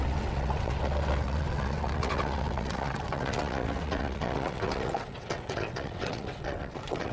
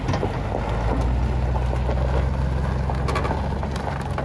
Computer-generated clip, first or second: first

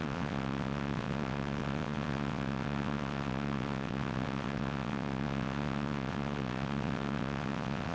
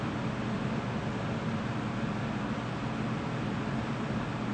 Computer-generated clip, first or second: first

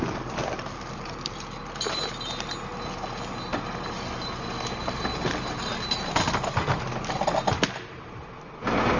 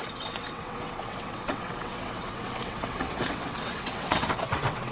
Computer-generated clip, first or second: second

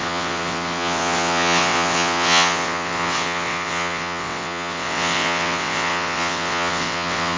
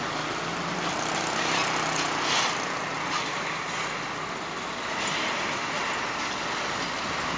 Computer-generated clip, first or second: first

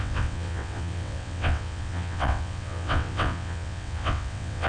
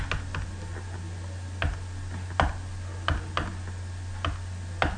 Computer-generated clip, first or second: first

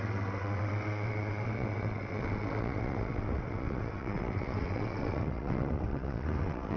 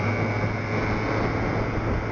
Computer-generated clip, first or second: first